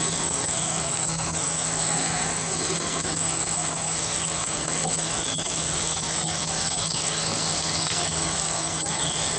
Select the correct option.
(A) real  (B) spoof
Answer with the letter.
B